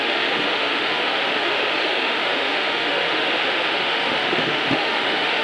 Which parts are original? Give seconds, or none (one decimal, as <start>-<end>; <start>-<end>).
none